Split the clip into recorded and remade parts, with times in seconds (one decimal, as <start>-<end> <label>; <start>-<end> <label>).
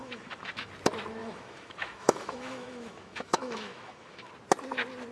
0.0-0.7 remade; 0.7-1.2 recorded; 1.2-4.3 remade; 4.3-5.1 recorded